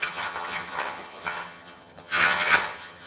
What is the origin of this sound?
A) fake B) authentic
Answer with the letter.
A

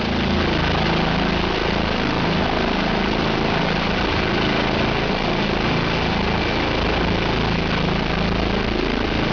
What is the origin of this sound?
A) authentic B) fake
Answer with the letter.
A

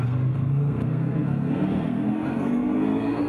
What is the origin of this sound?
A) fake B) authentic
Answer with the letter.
A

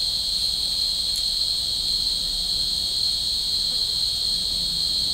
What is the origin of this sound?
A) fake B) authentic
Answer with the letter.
A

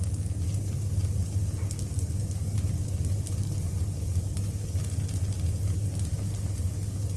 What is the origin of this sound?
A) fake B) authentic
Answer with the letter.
B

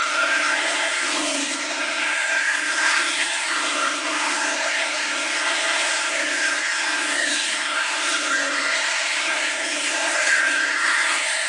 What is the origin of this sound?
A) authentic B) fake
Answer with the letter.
B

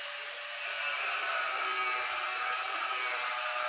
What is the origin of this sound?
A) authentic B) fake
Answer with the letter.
A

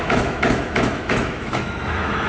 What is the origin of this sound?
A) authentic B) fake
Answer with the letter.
B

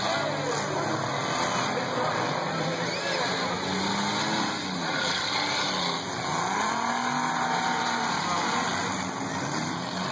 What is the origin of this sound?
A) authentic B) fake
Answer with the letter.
A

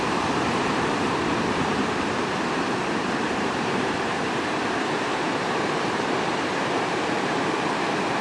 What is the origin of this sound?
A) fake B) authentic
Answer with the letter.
A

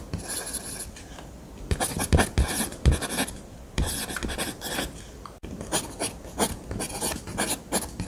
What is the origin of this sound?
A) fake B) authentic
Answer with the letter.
B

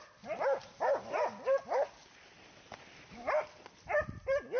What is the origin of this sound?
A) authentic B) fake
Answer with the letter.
A